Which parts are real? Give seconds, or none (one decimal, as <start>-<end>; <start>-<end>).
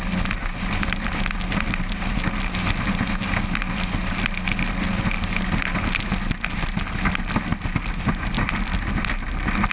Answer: 0.0-9.7